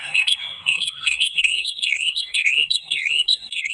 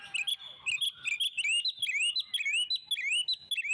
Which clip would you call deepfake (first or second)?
first